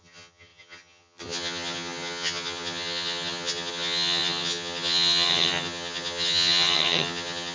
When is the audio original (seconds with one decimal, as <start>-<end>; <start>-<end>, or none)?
none